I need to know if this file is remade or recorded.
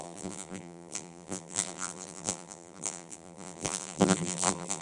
remade